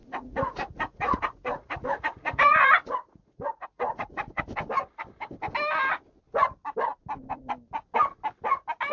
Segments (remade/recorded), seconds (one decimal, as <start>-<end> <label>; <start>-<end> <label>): 0.0-4.4 remade; 4.4-8.9 recorded